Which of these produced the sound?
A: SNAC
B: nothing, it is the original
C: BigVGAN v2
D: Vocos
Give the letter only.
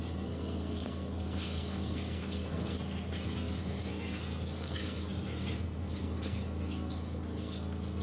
A